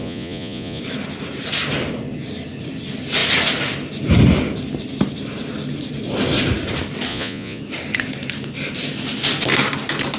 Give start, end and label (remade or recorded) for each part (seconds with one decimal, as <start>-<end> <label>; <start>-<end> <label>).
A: 0.0-0.8 remade; 0.8-7.1 recorded; 7.1-7.6 remade; 7.6-10.2 recorded